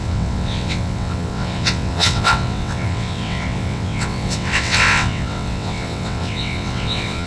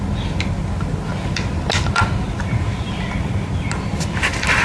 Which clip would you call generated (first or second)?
first